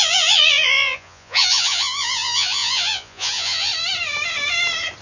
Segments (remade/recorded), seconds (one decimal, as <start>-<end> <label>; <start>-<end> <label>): 0.0-3.7 remade; 3.7-5.0 recorded